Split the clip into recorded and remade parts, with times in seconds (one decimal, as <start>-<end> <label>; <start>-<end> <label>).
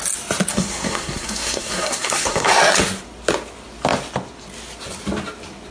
0.0-0.5 recorded; 0.5-2.5 remade; 2.5-5.7 recorded